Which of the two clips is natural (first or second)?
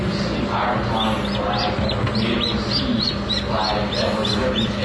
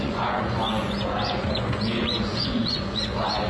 first